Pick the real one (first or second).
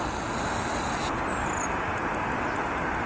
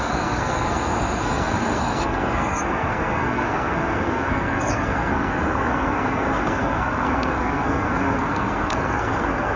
first